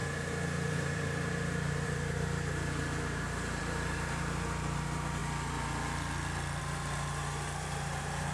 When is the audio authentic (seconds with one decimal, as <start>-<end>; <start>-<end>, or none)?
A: 5.2-6.6